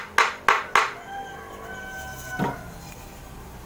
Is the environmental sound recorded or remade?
recorded